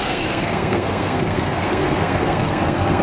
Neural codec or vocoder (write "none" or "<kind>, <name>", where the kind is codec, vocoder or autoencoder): codec, SNAC